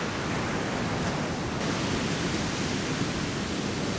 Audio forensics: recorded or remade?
recorded